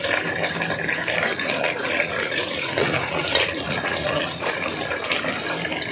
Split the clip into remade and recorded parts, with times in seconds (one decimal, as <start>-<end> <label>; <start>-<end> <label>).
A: 0.0-1.3 recorded; 1.3-4.8 remade; 4.8-5.9 recorded

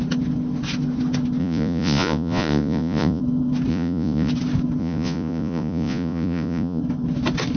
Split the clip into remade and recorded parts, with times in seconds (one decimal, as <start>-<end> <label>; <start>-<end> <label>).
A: 0.0-1.4 recorded; 1.4-3.2 remade; 3.2-3.7 recorded; 3.7-4.3 remade; 4.3-4.8 recorded; 4.8-6.8 remade; 6.8-7.6 recorded

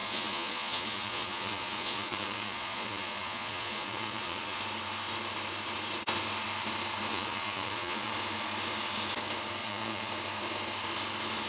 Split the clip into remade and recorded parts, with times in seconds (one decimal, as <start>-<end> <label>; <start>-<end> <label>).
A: 0.0-4.6 remade; 4.6-7.1 recorded; 7.1-8.1 remade; 8.1-9.6 recorded; 9.6-10.1 remade; 10.1-11.5 recorded

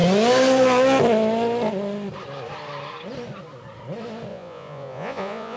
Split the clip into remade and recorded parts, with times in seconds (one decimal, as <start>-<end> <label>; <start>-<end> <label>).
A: 0.0-4.3 recorded; 4.3-5.6 remade

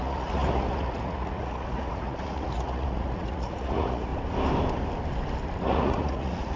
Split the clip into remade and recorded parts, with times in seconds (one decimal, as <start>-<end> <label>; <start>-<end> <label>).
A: 0.0-4.1 remade; 4.1-5.6 recorded; 5.6-6.6 remade

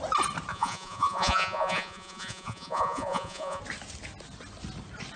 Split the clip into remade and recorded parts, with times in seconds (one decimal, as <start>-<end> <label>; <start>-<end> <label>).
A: 0.0-0.5 recorded; 0.5-3.6 remade; 3.6-5.2 recorded

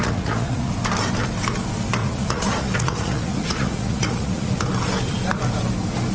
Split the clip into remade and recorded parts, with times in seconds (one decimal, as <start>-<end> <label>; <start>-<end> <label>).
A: 0.0-0.7 remade; 0.7-2.0 recorded; 2.0-4.6 remade; 4.6-6.1 recorded

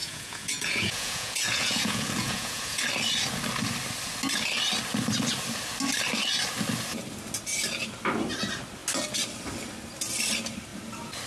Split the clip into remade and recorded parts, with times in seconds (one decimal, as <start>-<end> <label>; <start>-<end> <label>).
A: 0.0-2.8 remade; 2.8-11.3 recorded